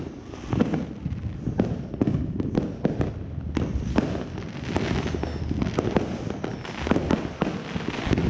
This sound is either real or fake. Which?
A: real